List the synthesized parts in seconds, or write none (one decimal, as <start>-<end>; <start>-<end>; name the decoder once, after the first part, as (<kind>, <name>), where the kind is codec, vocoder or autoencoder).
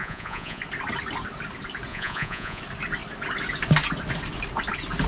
0.0-0.6 (vocoder, Vocos); 1.9-2.6